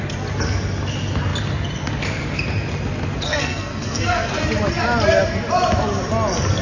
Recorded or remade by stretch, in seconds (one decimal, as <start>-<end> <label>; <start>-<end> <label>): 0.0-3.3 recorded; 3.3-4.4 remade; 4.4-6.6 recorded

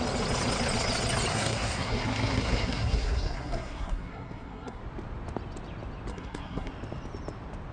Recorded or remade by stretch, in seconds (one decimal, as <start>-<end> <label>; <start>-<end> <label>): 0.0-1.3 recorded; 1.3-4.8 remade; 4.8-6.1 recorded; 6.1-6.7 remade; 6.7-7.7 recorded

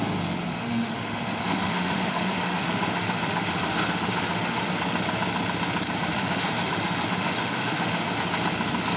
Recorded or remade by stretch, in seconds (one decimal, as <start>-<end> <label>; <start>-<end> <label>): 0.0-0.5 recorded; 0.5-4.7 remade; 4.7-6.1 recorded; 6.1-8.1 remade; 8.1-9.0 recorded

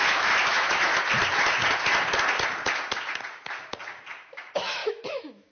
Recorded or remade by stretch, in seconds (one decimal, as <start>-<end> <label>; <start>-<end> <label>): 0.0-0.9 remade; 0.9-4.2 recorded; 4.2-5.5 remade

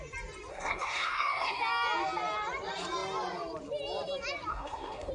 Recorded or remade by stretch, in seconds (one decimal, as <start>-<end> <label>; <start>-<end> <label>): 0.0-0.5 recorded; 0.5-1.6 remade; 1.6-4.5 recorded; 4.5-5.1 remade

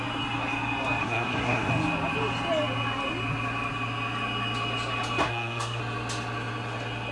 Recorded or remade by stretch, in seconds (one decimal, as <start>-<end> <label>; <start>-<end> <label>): 0.0-1.0 recorded; 1.0-1.7 remade; 1.7-5.2 recorded; 5.2-5.8 remade; 5.8-7.1 recorded